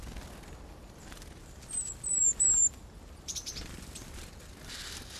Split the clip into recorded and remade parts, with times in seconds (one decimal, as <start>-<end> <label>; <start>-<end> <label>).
0.0-1.4 recorded; 1.4-4.5 remade; 4.5-5.2 recorded